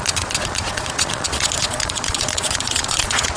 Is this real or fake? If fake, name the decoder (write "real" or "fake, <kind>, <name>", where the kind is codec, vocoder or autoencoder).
fake, vocoder, Vocos